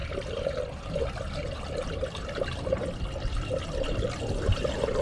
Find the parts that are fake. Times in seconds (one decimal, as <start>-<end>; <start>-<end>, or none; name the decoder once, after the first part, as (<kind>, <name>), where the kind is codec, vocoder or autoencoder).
none